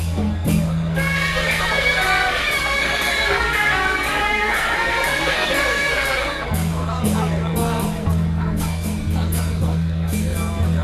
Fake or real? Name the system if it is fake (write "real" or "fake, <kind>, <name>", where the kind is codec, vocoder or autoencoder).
fake, codec, SNAC